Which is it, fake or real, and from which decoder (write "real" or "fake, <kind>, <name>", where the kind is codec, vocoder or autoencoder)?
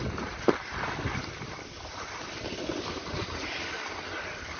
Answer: real